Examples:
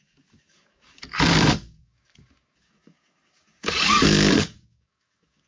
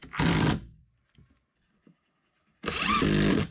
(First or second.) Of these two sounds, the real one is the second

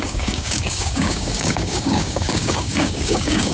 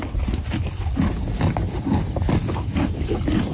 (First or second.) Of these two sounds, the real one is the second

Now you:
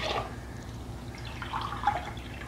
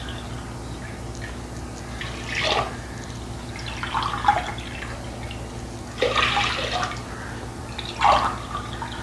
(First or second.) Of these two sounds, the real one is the second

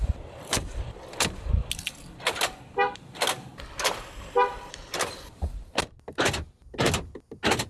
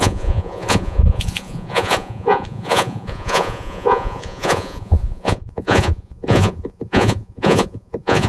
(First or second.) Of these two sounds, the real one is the first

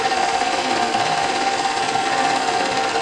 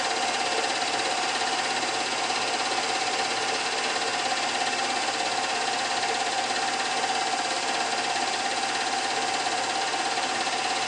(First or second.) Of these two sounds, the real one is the second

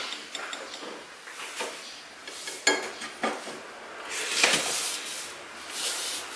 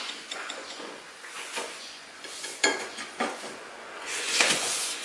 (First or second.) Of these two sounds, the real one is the first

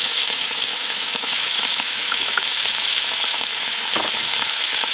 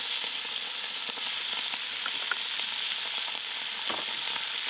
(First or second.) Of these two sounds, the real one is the second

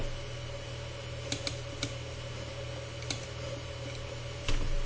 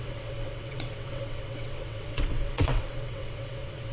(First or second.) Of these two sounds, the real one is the first